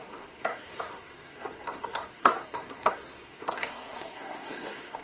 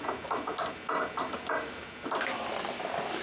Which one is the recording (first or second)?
second